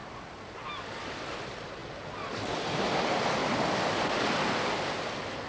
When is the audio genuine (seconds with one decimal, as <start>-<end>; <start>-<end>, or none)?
0.0-5.5